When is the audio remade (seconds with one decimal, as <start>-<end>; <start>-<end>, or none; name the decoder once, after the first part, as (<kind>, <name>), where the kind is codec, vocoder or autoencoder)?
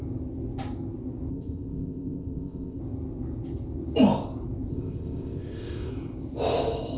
1.3-2.8 (codec, ZipCodec); 4.7-5.9